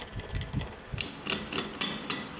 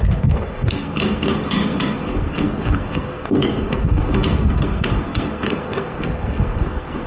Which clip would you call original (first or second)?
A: first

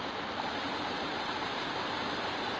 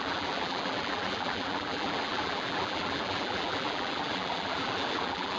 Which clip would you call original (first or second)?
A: first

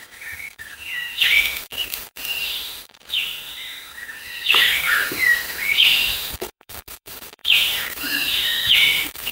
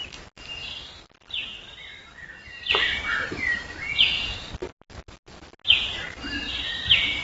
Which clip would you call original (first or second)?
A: second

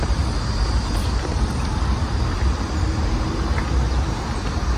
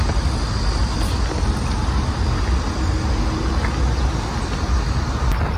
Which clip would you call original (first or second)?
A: second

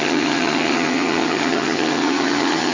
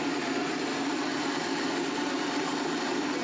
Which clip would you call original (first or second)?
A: second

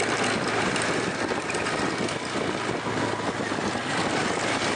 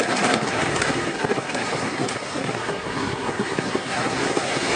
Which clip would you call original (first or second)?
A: first